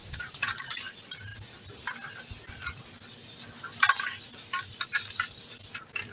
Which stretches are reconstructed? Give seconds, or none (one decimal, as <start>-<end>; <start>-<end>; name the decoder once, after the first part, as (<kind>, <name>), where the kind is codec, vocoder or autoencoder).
0.0-0.7 (vocoder, Vocos)